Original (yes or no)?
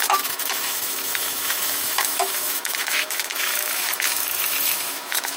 no